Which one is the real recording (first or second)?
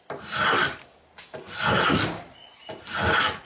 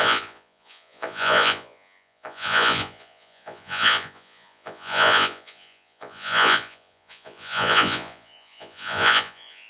first